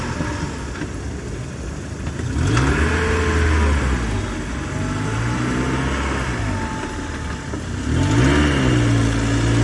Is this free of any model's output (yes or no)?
yes